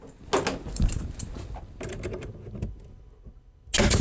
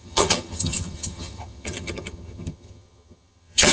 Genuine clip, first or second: first